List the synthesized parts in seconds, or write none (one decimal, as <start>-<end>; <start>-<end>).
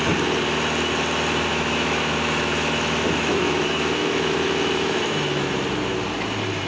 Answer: 1.5-5.5